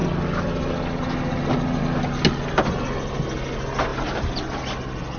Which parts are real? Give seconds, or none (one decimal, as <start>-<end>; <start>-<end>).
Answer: 0.0-5.2